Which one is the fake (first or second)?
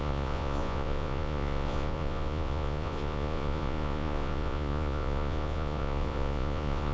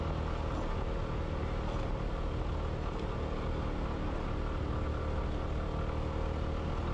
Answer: first